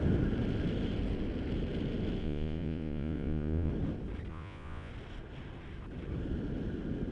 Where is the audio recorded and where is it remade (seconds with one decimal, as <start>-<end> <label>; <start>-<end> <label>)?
0.0-2.2 recorded; 2.2-3.7 remade; 3.7-4.3 recorded; 4.3-4.9 remade; 4.9-7.1 recorded